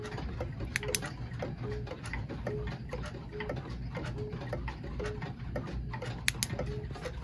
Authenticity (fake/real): real